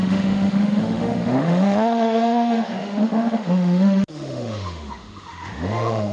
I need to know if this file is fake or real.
fake